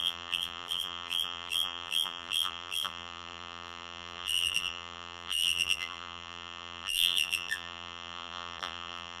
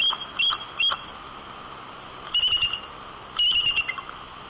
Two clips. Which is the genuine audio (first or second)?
second